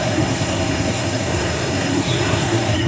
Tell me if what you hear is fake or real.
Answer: fake